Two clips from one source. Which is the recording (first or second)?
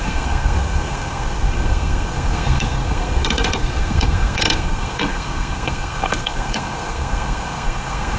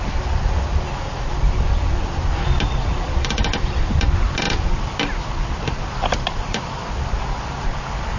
second